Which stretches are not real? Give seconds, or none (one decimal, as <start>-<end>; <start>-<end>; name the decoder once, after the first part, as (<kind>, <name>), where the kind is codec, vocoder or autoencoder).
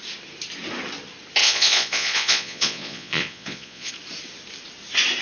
1.4-3.9 (vocoder, Vocos)